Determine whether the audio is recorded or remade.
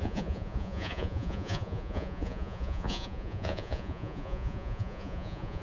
remade